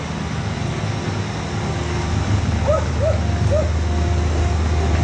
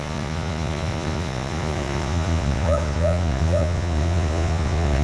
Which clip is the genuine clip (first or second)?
first